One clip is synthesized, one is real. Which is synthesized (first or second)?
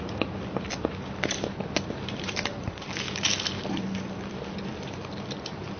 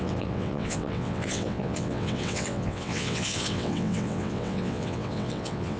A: second